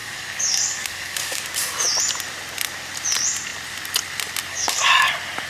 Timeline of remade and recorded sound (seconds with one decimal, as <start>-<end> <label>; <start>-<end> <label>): 0.0-1.4 remade; 1.4-4.5 recorded; 4.5-5.1 remade; 5.1-5.5 recorded